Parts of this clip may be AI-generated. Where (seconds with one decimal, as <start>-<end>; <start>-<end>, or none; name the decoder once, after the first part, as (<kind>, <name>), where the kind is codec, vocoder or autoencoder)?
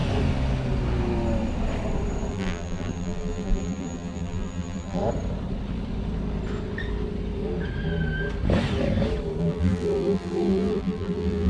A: 2.3-5.0 (vocoder, BigVGAN v2); 9.4-11.5